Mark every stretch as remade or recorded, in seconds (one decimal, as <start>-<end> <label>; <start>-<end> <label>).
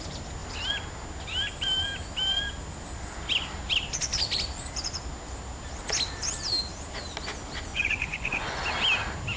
0.0-7.7 recorded; 7.7-8.6 remade; 8.6-9.4 recorded